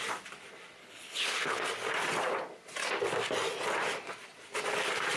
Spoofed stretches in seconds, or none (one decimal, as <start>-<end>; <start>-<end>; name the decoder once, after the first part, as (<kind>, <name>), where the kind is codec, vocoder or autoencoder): 0.8-1.6 (codec, HILCodec)